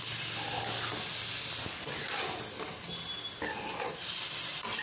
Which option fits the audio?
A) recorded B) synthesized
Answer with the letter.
A